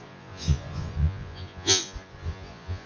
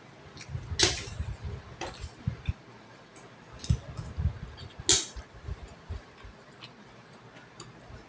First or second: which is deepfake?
first